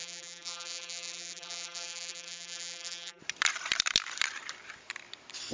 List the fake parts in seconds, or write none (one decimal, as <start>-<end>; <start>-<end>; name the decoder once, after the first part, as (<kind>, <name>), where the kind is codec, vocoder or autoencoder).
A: 0.0-3.2 (vocoder, BigVGAN v2)